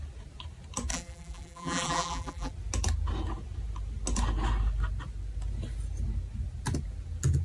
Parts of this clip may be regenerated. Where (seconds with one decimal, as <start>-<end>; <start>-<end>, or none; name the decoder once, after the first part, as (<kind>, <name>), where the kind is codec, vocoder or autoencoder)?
0.9-2.5 (vocoder, BigVGAN v2)